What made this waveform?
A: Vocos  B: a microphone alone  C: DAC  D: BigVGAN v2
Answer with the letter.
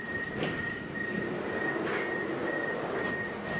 B